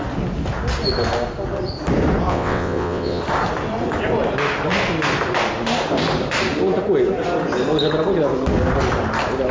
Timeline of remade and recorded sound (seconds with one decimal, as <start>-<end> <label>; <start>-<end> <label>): 0.0-2.3 recorded; 2.3-3.2 remade; 3.2-9.5 recorded